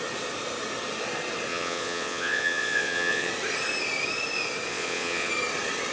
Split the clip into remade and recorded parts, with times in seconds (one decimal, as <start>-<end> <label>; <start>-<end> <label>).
0.0-1.5 recorded; 1.5-3.3 remade; 3.3-4.7 recorded; 4.7-5.3 remade; 5.3-5.9 recorded